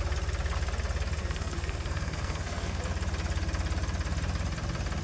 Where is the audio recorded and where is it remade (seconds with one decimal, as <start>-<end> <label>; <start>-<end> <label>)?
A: 0.0-1.2 recorded; 1.2-2.8 remade; 2.8-5.0 recorded